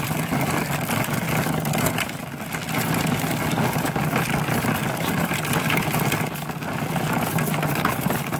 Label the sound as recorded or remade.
recorded